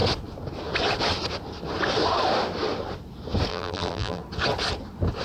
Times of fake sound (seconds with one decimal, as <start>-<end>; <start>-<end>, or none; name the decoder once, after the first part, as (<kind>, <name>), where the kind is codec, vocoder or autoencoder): 3.5-4.2 (vocoder, BigVGAN v2)